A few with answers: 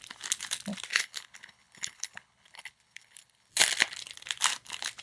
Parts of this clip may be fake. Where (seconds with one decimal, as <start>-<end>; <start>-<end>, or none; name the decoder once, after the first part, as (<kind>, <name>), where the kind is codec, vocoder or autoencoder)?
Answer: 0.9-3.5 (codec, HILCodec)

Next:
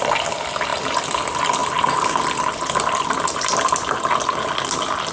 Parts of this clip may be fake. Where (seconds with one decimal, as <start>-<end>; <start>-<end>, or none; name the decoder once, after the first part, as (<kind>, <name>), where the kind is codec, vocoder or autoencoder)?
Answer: 0.7-1.2 (vocoder, BigVGAN v2); 1.6-3.9

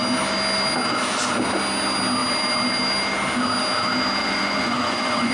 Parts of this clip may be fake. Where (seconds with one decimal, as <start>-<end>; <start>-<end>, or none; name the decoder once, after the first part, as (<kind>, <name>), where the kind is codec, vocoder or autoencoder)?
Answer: 4.2-5.3 (vocoder, Vocos)

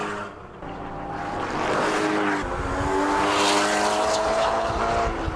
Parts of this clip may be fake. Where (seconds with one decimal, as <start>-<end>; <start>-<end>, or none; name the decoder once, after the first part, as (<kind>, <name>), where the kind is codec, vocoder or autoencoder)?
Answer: 4.1-4.8 (codec, HILCodec)

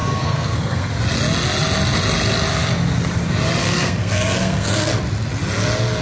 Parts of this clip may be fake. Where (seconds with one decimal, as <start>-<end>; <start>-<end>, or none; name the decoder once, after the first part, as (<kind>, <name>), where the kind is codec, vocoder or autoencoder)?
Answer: 0.0-0.9 (codec, SNAC); 3.6-4.9

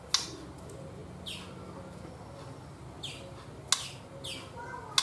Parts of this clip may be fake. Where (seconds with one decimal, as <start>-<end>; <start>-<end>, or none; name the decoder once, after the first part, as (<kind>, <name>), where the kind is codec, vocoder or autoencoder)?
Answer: none